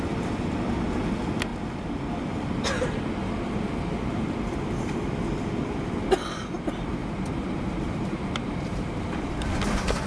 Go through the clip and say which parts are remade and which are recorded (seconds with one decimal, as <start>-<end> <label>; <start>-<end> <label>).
0.0-7.0 recorded; 7.0-9.0 remade; 9.0-10.1 recorded